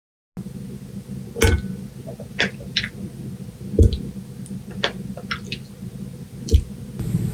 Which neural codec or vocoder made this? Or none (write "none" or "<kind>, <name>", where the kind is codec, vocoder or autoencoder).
none